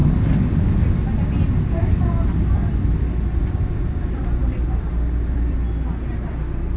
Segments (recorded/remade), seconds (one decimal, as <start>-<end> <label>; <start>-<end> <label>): 0.0-3.8 recorded; 3.8-6.8 remade